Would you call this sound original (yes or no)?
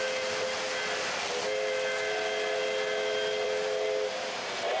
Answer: yes